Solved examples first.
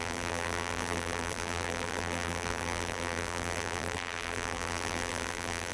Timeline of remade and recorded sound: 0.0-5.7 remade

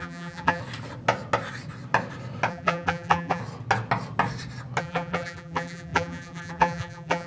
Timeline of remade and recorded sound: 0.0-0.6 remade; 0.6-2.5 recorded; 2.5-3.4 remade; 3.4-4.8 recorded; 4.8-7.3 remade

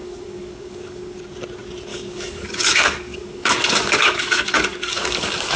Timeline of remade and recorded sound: 0.0-1.2 remade; 1.2-1.9 recorded; 1.9-5.6 remade